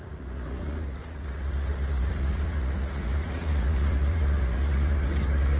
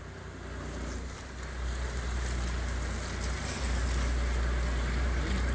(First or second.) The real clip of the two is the second